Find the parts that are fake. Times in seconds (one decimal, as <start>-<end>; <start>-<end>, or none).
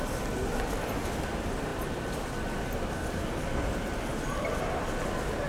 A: none